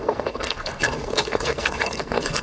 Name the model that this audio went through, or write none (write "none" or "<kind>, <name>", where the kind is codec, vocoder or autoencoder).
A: codec, SNAC